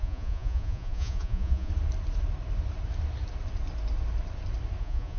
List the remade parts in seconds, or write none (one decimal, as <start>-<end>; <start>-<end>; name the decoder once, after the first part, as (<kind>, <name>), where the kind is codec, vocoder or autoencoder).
0.0-1.7 (vocoder, Vocos); 4.8-5.2